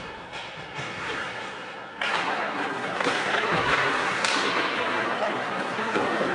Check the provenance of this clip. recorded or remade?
remade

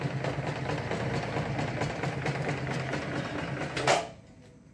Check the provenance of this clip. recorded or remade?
recorded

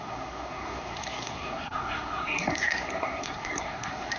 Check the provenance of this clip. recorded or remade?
remade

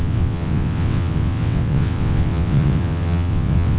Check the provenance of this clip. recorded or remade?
remade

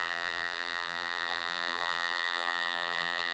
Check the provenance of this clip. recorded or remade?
remade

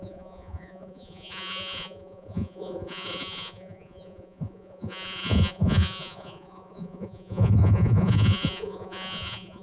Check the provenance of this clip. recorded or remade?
remade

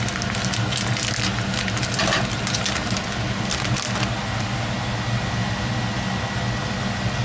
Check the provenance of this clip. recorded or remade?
recorded